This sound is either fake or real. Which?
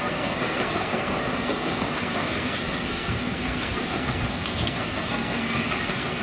fake